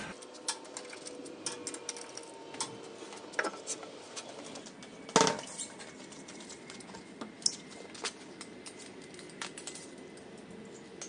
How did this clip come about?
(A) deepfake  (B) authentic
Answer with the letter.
B